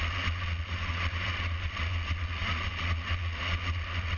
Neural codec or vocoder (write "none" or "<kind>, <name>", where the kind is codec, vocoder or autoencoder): vocoder, Vocos